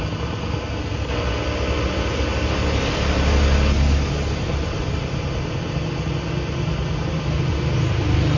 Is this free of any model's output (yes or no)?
yes